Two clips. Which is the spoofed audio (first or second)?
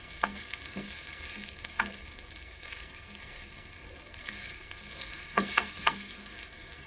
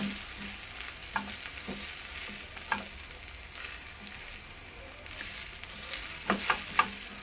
first